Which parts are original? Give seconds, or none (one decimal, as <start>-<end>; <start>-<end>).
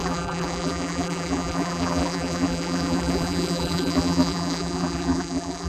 none